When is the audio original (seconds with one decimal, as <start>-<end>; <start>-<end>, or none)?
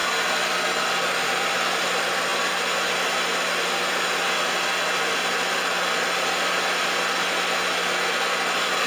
0.0-8.9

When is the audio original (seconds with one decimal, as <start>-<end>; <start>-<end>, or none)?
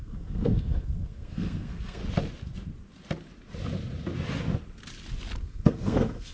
2.0-5.4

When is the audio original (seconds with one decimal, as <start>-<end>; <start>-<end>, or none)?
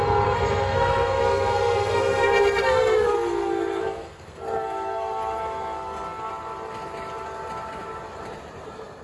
6.3-9.0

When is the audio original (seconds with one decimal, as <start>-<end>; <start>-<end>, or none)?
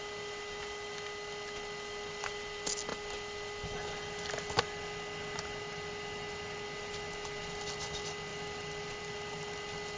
0.0-10.0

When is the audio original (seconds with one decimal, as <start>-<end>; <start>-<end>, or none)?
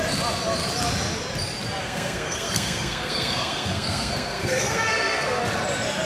0.0-1.8; 5.4-6.0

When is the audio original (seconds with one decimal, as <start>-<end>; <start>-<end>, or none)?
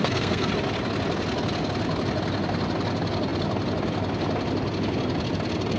0.5-5.8